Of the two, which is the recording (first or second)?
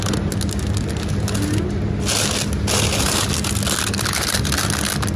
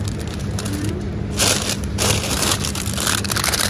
first